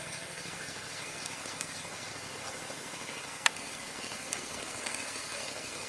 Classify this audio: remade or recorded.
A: remade